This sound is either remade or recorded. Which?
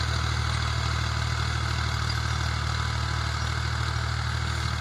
recorded